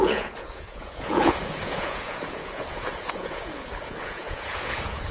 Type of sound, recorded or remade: remade